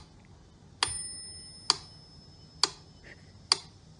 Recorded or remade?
recorded